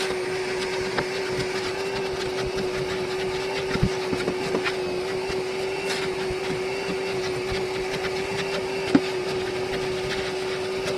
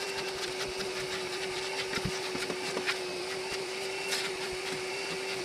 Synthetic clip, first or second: second